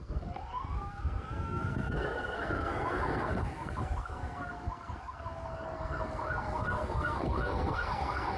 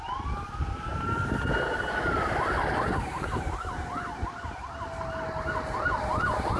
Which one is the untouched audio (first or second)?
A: second